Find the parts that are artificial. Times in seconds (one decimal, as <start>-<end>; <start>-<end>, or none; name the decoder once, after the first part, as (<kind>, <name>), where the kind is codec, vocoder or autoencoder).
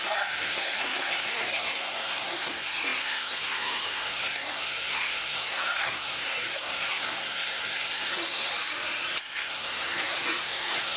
0.0-8.5 (codec, SNAC); 9.2-11.0